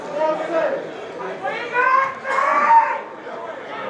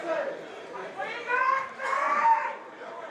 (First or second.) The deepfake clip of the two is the second